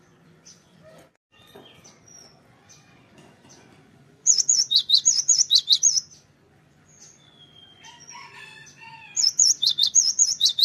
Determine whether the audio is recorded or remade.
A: remade